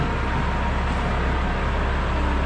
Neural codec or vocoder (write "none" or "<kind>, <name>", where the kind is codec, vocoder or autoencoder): none